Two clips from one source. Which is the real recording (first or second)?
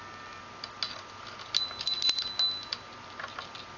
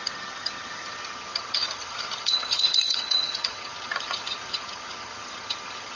first